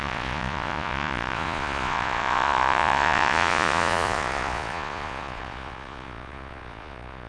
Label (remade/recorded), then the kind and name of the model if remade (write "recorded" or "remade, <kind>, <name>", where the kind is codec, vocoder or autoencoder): remade, vocoder, Vocos